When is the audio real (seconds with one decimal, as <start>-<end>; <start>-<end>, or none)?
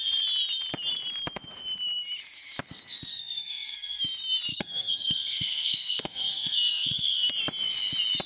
0.0-3.1; 4.0-4.5; 7.3-8.3